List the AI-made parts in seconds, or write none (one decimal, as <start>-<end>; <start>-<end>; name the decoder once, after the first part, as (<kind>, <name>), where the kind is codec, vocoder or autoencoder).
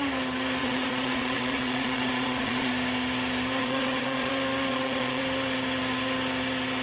0.6-2.7 (vocoder, Vocos); 3.6-4.3; 4.7-5.2